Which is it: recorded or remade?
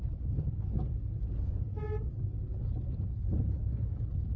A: recorded